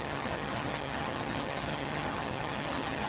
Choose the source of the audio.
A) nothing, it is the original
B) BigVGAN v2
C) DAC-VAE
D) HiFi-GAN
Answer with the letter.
D